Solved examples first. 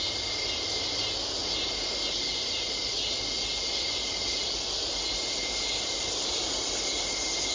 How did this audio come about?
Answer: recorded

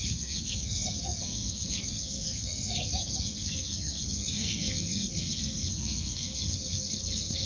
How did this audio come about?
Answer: remade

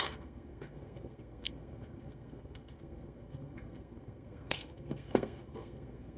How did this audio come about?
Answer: remade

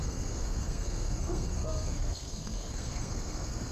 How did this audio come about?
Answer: remade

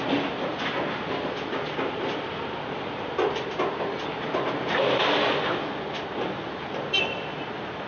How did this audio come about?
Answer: recorded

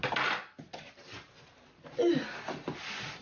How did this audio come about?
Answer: recorded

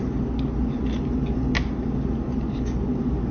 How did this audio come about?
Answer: recorded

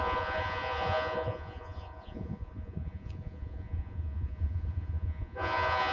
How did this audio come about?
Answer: remade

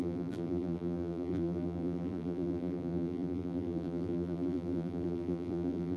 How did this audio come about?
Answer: remade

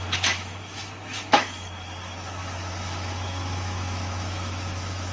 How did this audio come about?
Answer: remade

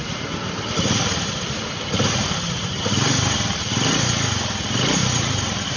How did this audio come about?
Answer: recorded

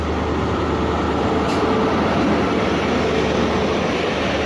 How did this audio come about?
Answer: recorded